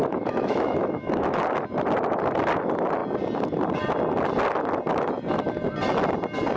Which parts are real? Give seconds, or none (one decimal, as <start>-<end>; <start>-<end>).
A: 1.4-6.6